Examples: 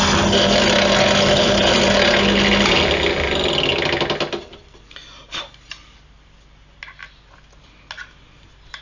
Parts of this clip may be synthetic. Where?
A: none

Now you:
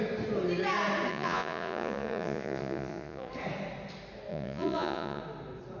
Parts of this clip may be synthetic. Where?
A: 1.1-3.3; 4.3-5.2